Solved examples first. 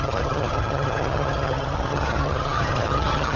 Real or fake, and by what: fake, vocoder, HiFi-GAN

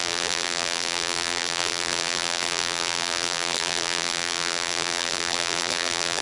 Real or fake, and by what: fake, vocoder, BigVGAN v2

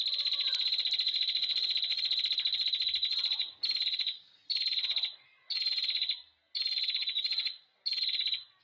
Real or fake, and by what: real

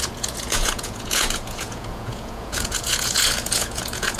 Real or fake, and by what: fake, vocoder, Vocos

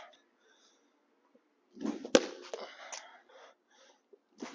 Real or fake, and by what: real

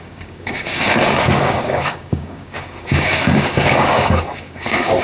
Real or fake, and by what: fake, codec, DAC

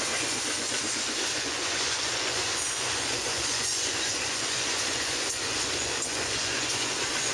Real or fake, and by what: fake, vocoder, Vocos